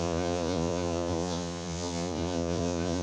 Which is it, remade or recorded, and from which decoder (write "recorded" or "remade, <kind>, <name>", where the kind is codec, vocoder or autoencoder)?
remade, vocoder, Vocos